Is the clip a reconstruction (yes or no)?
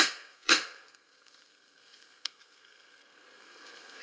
yes